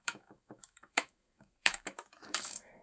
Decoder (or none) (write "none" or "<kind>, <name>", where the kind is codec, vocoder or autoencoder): autoencoder, DAC-VAE